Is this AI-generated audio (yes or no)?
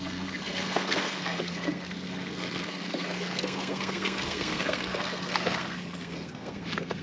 yes